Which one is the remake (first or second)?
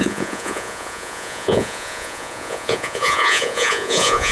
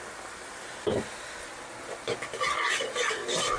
first